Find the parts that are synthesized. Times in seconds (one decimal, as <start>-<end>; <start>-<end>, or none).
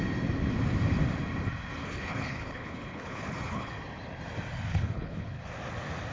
1.8-3.7; 4.7-5.4